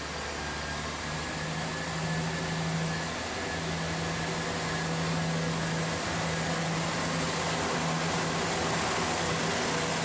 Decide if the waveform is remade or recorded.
recorded